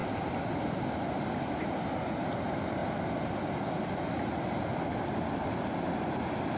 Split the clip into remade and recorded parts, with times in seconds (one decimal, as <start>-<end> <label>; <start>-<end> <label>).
0.0-6.6 recorded